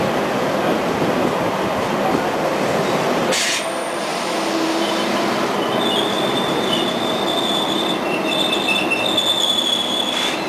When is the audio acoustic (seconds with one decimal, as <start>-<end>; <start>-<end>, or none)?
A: 0.0-0.7; 1.7-10.5